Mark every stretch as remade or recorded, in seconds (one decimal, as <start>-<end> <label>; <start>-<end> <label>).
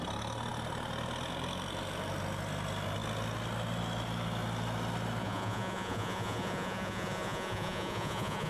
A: 0.0-5.2 recorded; 5.2-8.5 remade